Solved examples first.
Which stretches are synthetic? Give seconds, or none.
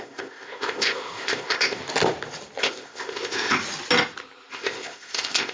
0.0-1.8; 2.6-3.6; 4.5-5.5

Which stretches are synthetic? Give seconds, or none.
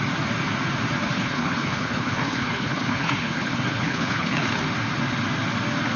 1.0-4.6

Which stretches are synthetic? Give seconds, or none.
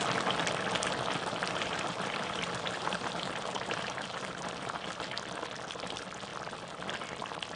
1.6-4.9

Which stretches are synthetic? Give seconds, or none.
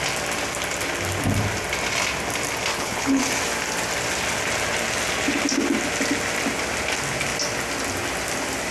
2.7-3.2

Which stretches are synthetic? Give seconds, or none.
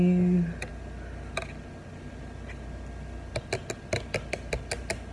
none